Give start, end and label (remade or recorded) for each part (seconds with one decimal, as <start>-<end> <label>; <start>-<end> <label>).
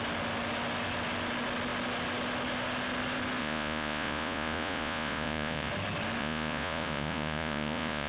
0.0-3.4 recorded; 3.4-5.7 remade; 5.7-6.2 recorded; 6.2-8.1 remade